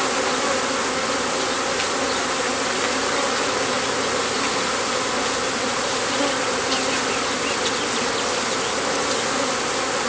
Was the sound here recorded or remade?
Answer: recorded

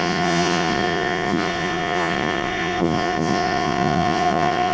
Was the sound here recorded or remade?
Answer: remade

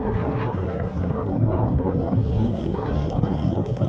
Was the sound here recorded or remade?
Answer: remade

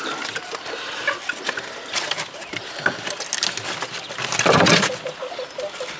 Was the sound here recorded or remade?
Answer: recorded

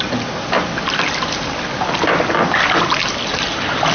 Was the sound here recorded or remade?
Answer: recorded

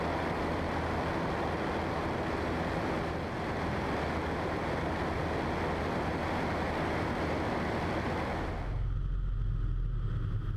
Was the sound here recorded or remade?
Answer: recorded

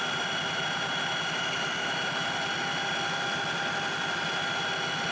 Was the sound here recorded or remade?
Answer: recorded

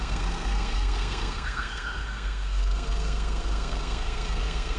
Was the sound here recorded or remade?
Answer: remade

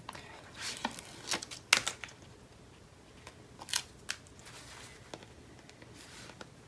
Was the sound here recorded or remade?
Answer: recorded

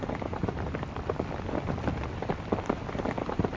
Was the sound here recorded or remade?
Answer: recorded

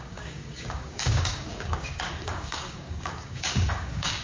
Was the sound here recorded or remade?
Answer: remade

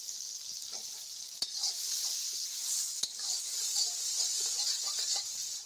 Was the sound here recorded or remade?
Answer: recorded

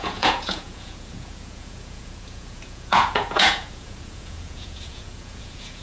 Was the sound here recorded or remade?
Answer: remade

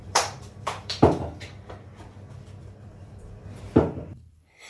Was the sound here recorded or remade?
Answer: remade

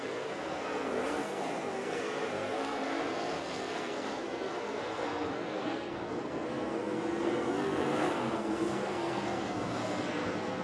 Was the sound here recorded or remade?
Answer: remade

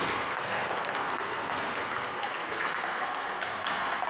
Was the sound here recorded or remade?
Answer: remade